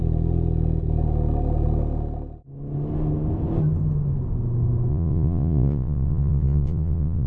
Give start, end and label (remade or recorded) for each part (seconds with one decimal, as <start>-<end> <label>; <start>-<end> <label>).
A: 0.0-4.9 recorded; 4.9-7.3 remade